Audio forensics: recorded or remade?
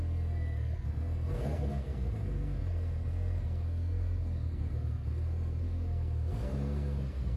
remade